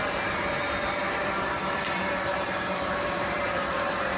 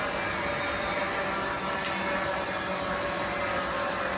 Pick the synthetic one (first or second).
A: first